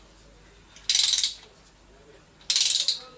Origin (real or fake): real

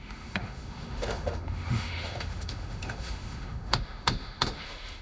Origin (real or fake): fake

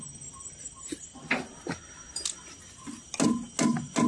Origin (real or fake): real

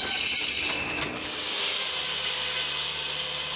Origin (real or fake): real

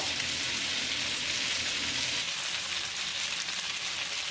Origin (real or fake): real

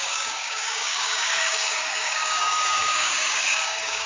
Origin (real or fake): fake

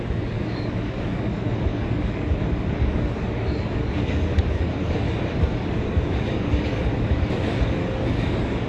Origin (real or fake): fake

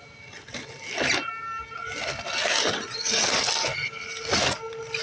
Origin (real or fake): real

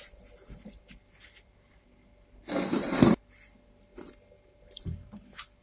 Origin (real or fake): real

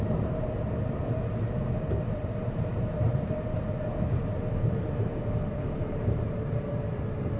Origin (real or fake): fake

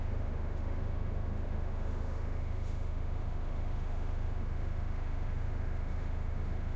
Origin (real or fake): fake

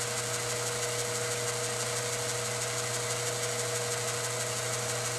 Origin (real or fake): real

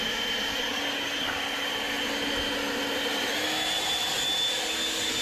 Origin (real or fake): real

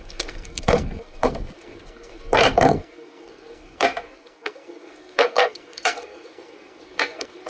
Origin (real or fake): fake